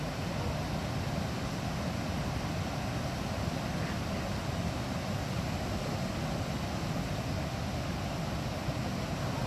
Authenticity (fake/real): real